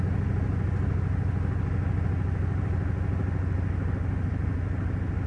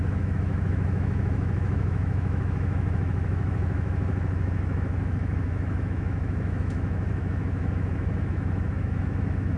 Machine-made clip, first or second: second